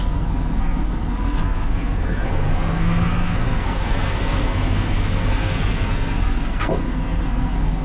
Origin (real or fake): fake